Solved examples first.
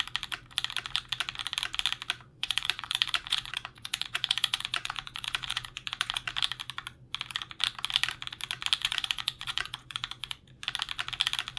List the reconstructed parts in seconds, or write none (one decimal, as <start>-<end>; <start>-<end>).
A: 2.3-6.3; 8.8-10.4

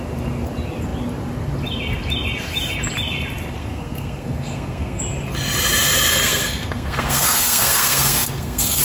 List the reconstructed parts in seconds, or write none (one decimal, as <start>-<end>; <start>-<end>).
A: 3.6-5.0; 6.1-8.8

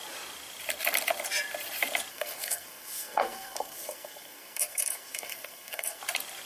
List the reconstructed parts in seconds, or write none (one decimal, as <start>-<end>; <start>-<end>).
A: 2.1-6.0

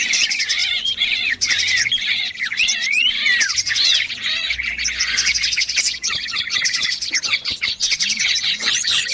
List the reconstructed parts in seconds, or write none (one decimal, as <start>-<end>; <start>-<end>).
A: 0.0-9.1

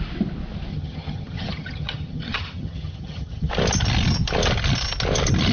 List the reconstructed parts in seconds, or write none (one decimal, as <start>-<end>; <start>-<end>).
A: 0.7-3.5

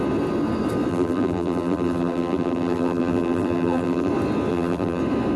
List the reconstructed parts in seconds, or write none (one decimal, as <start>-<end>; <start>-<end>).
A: 0.9-4.1; 4.5-5.0